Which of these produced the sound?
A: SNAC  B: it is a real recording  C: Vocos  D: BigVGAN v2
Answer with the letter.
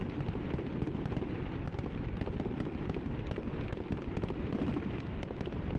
D